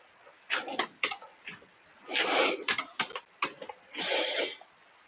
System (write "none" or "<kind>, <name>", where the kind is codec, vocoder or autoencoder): none